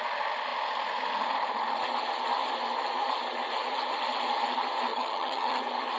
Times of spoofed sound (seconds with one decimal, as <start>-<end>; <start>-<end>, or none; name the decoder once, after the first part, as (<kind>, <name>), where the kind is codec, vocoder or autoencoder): 4.9-5.6 (vocoder, HiFi-GAN)